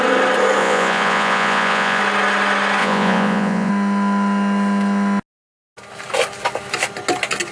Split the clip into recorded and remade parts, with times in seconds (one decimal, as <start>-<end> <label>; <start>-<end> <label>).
0.0-0.6 recorded; 0.6-2.0 remade; 2.0-2.8 recorded; 2.8-3.7 remade; 3.7-7.5 recorded